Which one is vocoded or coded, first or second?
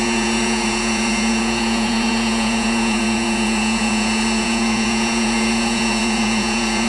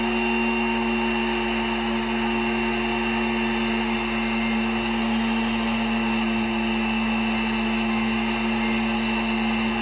first